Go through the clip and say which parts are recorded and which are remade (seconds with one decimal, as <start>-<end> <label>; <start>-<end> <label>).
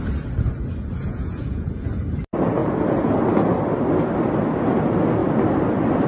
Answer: 0.0-1.0 recorded; 1.0-2.0 remade; 2.0-6.1 recorded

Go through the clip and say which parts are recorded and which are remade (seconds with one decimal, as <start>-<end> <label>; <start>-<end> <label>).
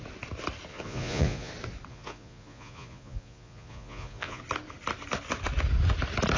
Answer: 0.0-0.7 recorded; 0.7-1.5 remade; 1.5-1.9 recorded; 1.9-4.4 remade; 4.4-6.4 recorded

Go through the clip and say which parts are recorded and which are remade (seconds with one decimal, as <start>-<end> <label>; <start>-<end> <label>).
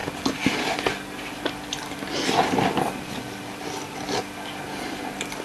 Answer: 0.0-5.4 recorded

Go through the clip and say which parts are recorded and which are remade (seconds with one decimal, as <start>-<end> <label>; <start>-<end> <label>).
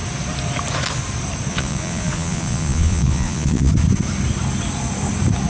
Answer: 0.0-1.5 recorded; 1.5-3.7 remade; 3.7-5.5 recorded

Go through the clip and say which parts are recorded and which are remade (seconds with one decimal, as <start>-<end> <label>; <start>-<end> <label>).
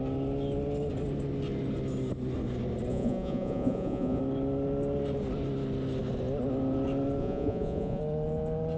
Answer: 0.0-2.9 recorded; 2.9-4.2 remade; 4.2-7.2 recorded; 7.2-8.0 remade; 8.0-8.8 recorded